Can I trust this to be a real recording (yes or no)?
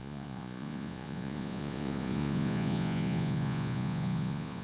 no